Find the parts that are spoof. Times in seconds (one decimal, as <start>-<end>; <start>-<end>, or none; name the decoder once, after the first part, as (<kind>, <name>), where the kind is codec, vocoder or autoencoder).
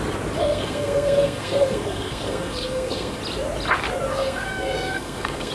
0.4-3.2 (codec, SNAC); 4.1-5.5